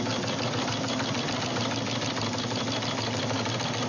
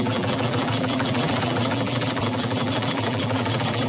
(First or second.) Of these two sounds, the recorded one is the first